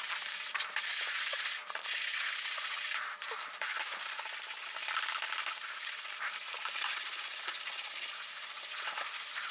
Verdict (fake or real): fake